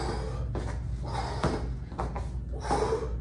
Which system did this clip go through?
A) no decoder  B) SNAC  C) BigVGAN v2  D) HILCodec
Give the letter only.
A